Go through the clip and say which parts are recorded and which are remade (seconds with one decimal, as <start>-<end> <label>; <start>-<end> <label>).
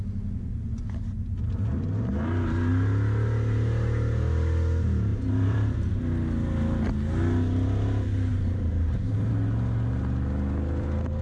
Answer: 0.0-5.1 recorded; 5.1-5.9 remade; 5.9-8.3 recorded; 8.3-9.3 remade; 9.3-11.2 recorded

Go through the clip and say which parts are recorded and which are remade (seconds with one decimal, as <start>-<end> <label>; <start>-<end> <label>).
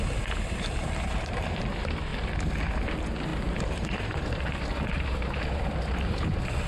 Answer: 0.0-2.1 remade; 2.1-2.8 recorded; 2.8-6.7 remade